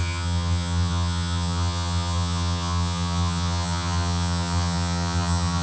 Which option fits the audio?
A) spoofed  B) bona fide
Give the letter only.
A